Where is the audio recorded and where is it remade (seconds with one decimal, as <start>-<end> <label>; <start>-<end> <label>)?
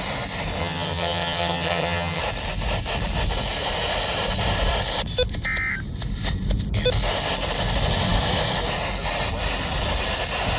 0.0-0.6 recorded; 0.6-2.2 remade; 2.2-10.6 recorded